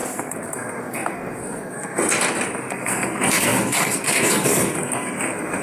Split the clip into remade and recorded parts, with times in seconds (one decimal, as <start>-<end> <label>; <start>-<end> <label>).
0.0-2.0 remade; 2.0-2.7 recorded; 2.7-5.6 remade